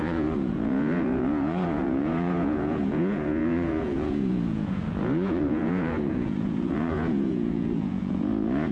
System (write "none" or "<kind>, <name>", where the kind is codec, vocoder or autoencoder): vocoder, Vocos